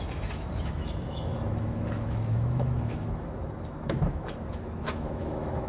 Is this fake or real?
fake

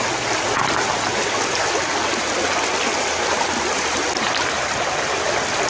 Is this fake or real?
real